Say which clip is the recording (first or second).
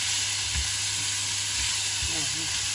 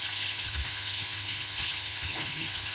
first